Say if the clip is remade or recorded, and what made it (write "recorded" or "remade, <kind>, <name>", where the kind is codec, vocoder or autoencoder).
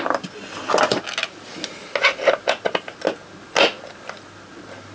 recorded